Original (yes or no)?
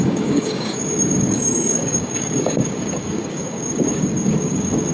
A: no